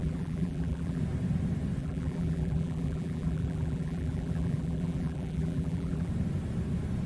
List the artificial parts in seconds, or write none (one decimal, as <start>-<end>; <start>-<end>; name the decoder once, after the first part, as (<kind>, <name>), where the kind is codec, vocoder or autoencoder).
0.0-1.0 (vocoder, BigVGAN v2); 1.8-6.1